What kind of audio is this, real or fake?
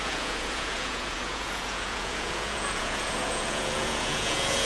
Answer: fake